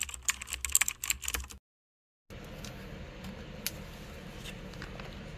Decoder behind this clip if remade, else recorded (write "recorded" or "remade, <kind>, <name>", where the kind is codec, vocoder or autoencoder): recorded